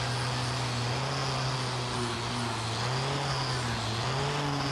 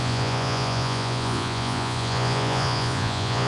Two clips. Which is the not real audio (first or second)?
second